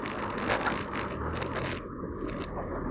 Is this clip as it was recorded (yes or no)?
yes